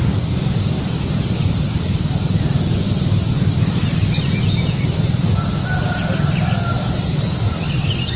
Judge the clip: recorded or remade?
recorded